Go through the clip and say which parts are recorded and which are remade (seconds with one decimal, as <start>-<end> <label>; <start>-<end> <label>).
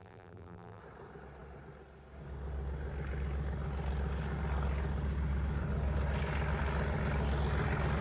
0.0-0.8 remade; 0.8-8.0 recorded